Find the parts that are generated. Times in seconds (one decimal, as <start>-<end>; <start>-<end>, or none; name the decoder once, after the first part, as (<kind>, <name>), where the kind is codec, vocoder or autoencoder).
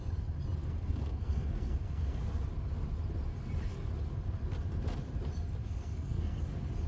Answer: 0.6-2.2 (codec, SNAC); 5.6-6.4